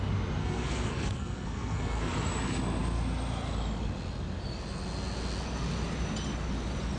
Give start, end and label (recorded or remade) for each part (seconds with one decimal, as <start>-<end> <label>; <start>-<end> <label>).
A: 0.0-0.4 recorded; 0.4-2.1 remade; 2.1-7.0 recorded